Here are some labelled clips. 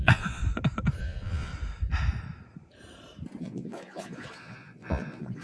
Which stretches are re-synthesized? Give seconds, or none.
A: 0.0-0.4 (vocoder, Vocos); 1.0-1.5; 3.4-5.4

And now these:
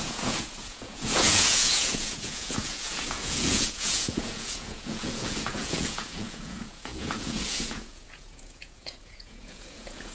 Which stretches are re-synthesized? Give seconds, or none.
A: 0.0-10.1 (vocoder, Vocos)

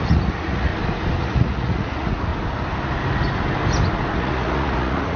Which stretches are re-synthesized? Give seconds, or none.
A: 0.0-0.7 (vocoder, Vocos); 1.2-2.3; 4.1-5.2